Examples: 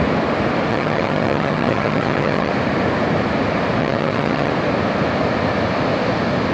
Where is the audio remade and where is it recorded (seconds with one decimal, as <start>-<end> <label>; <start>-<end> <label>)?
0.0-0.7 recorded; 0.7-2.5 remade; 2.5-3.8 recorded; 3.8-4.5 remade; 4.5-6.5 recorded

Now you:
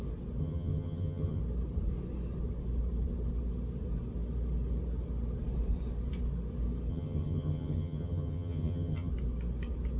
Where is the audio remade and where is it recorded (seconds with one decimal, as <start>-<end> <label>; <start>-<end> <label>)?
0.0-0.4 recorded; 0.4-1.4 remade; 1.4-6.9 recorded; 6.9-9.1 remade; 9.1-10.0 recorded

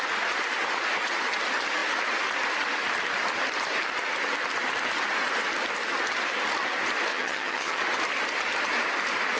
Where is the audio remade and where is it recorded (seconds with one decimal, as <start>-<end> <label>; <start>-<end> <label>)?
0.0-7.1 recorded; 7.1-7.8 remade; 7.8-9.4 recorded

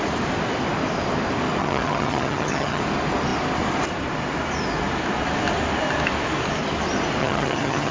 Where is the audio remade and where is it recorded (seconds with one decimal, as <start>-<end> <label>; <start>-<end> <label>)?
0.0-1.6 recorded; 1.6-2.8 remade; 2.8-7.2 recorded; 7.2-7.9 remade